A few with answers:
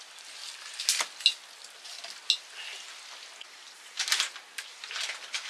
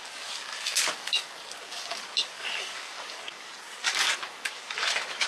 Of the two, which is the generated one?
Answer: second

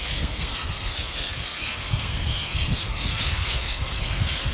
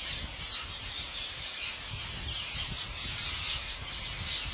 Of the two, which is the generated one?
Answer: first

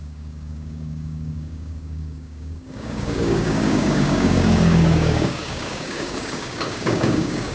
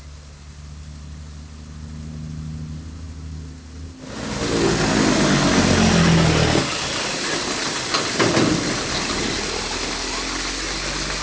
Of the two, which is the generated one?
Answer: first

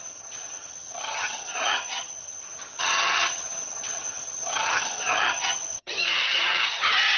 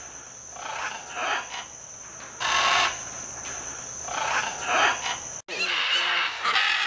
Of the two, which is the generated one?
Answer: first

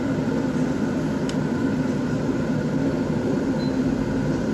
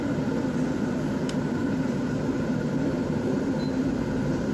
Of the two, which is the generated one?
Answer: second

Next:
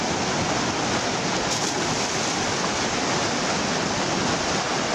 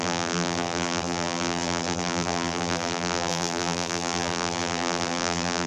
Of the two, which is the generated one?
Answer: second